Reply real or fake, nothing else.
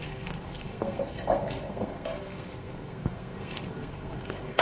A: fake